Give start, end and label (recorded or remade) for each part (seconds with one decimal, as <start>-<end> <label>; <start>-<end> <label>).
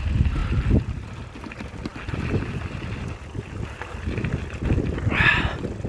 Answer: 0.0-5.9 recorded